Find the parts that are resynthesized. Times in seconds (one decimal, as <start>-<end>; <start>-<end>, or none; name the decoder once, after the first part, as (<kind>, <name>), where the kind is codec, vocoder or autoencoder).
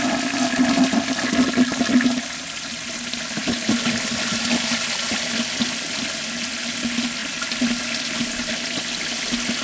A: none